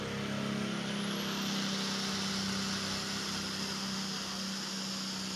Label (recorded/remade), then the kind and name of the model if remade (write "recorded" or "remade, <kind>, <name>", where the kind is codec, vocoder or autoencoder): recorded